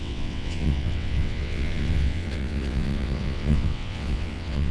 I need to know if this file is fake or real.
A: fake